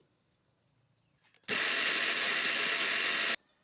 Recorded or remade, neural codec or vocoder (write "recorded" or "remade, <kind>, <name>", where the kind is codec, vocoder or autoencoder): recorded